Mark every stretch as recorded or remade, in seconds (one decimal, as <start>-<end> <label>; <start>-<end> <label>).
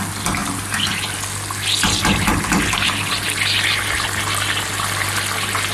0.0-5.7 recorded